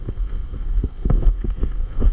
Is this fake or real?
fake